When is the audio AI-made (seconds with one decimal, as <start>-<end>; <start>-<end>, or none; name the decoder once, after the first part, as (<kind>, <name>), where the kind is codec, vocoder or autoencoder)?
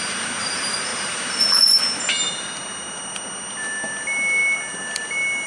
none